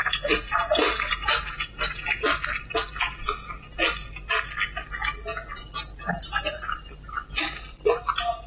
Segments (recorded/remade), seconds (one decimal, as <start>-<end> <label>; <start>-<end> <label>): 0.0-2.2 remade; 2.2-8.5 recorded